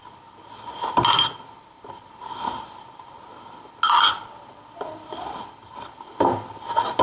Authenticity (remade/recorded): recorded